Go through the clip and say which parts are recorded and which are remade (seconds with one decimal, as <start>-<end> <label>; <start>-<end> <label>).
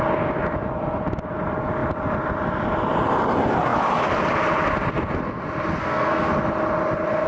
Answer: 0.0-5.8 recorded; 5.8-6.3 remade; 6.3-7.3 recorded